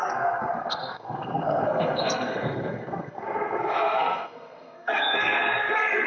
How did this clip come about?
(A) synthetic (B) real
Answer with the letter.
A